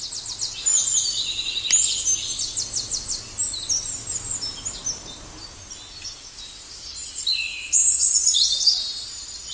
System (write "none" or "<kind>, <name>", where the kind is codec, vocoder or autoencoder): none